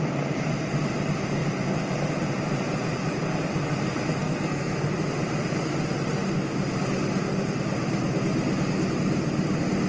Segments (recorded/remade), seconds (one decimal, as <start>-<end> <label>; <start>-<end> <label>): 0.0-4.2 recorded; 4.2-4.9 remade; 4.9-9.9 recorded